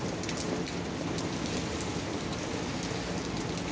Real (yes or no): yes